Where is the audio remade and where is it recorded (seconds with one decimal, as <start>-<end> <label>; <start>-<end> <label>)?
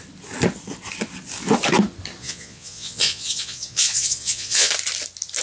0.0-2.2 recorded; 2.2-4.7 remade; 4.7-5.4 recorded